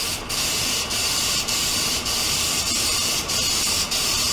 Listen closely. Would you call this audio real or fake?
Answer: fake